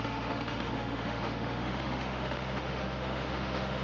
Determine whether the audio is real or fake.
fake